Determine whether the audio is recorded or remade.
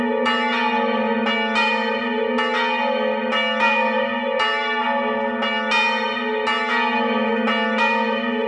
recorded